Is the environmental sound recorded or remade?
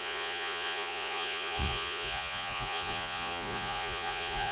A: remade